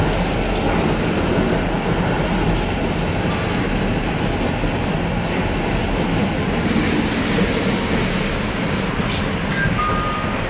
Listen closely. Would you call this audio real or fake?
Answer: real